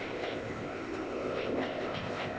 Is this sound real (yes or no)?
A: no